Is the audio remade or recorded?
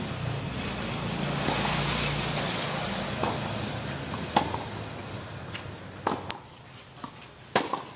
recorded